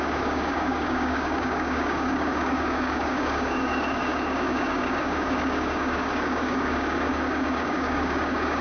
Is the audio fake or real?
fake